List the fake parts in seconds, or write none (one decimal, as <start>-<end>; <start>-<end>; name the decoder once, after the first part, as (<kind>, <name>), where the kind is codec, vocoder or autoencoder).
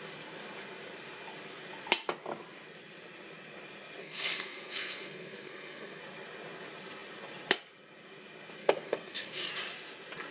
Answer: 4.0-6.0 (codec, SNAC); 8.6-9.5